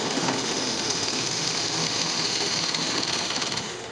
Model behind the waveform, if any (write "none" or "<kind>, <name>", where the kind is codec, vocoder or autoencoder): autoencoder, DAC-VAE